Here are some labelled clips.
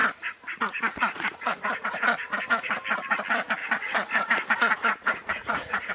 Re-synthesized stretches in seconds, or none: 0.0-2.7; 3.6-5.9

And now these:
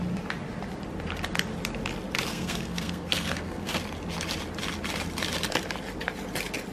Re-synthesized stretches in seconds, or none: 2.3-3.8

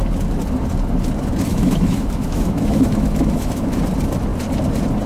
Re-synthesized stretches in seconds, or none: 1.5-3.8

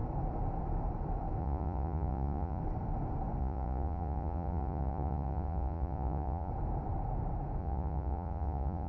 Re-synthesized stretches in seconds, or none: 1.4-2.6; 3.4-6.5; 7.6-8.9

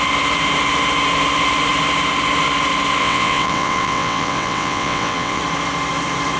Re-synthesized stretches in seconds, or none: 3.0-5.4

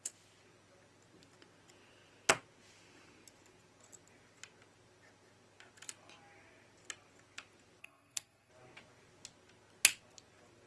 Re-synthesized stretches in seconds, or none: 7.8-8.5

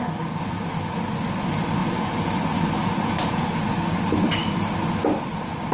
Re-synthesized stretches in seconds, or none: 1.8-2.3; 2.8-3.6